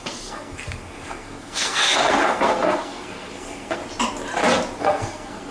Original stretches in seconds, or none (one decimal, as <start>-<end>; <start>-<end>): 3.8-4.8